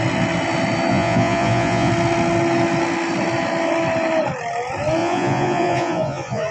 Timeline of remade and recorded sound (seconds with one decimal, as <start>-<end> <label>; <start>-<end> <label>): 0.0-0.9 recorded; 0.9-1.9 remade; 1.9-5.0 recorded; 5.0-6.5 remade